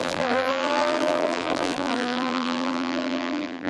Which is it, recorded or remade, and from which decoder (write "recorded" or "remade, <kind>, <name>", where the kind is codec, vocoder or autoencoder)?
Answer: remade, vocoder, BigVGAN v2